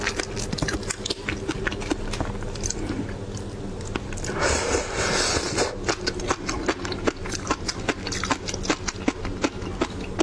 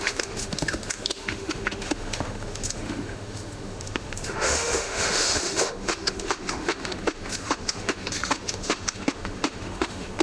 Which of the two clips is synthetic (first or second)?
second